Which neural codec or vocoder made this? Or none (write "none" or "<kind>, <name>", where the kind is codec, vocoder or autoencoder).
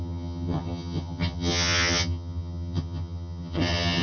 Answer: vocoder, HiFi-GAN